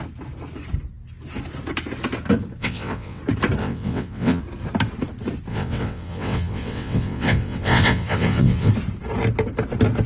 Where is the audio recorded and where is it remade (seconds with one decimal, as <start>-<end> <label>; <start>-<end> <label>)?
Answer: 0.0-2.6 recorded; 2.6-3.2 remade; 3.2-3.6 recorded; 3.6-4.4 remade; 4.4-5.5 recorded; 5.5-8.7 remade; 8.7-10.1 recorded